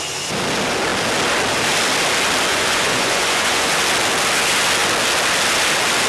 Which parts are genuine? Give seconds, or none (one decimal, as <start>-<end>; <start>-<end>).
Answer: 0.0-2.5; 3.7-6.1